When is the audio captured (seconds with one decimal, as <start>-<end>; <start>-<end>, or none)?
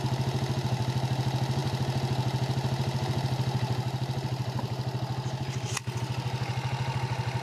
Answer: 0.0-7.4